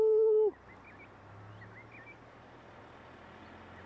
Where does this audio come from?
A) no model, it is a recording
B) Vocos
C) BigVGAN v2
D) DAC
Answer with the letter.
A